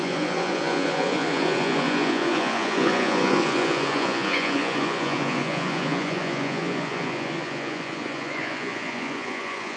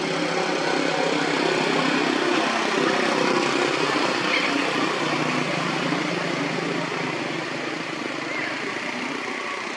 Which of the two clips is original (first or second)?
second